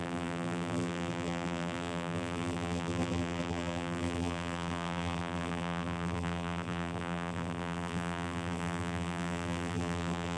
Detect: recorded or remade remade